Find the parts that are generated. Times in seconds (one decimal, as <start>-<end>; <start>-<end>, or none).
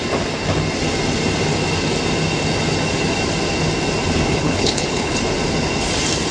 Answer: 4.4-5.2